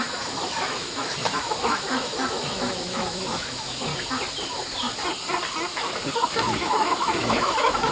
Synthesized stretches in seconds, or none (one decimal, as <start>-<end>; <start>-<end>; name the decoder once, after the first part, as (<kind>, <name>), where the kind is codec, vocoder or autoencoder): 0.0-3.9 (autoencoder, DAC-VAE); 6.1-7.9